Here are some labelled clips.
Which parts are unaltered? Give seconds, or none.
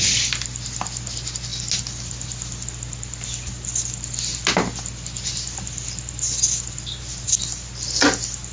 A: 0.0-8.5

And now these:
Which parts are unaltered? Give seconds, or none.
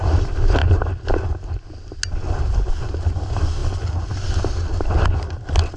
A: 0.0-5.8